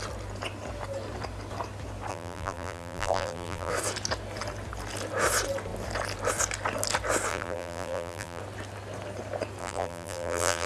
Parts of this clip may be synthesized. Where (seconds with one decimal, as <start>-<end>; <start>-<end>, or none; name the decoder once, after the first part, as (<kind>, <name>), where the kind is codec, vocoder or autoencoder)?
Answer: 2.1-3.7 (vocoder, BigVGAN v2); 7.3-8.4; 9.6-10.7